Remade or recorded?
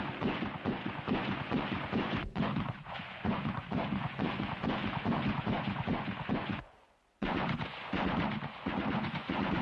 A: remade